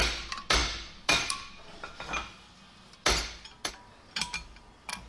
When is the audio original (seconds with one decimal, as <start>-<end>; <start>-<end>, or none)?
0.0-5.1